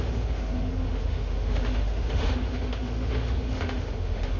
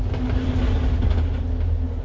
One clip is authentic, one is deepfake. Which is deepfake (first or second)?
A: first